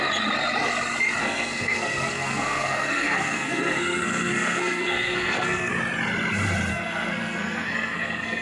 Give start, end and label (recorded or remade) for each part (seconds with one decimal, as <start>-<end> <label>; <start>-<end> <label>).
0.0-1.2 recorded; 1.2-5.7 remade; 5.7-6.7 recorded; 6.7-8.4 remade